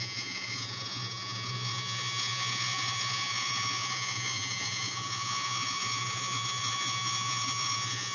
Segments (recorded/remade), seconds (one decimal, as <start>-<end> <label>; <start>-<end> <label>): 0.0-8.1 remade